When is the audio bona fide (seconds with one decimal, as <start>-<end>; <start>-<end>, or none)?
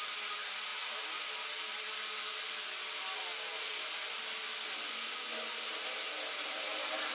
0.0-7.1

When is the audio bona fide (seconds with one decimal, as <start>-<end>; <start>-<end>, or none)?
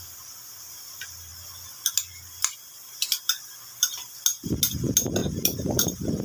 0.0-5.2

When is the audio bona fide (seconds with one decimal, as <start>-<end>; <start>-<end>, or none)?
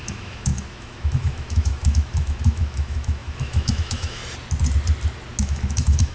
4.2-5.4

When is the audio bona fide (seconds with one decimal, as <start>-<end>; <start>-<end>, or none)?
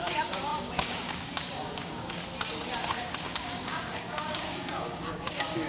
2.2-3.2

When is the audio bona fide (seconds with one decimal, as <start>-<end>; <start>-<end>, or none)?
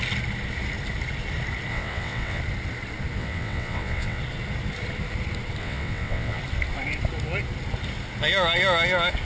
0.0-1.7; 2.4-3.2; 4.2-5.6; 6.4-9.2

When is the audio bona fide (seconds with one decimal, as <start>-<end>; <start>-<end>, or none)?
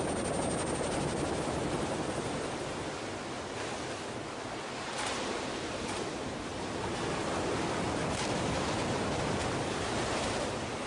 none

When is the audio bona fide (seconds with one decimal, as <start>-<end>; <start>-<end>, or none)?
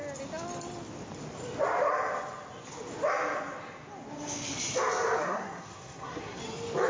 0.0-5.2; 6.4-6.9